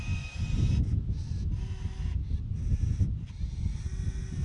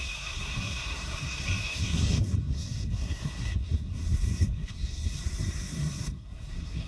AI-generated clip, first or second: second